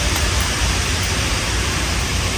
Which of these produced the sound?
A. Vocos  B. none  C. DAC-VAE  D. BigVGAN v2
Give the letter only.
D